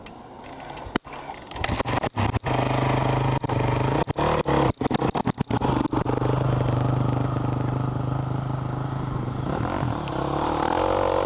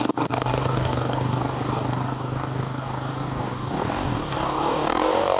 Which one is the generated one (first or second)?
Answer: second